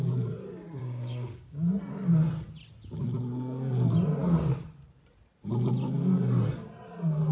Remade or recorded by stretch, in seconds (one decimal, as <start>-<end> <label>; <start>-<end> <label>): 0.0-0.8 recorded; 0.8-1.7 remade; 1.7-7.3 recorded